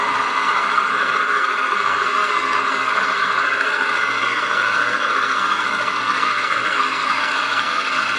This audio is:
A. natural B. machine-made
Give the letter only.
B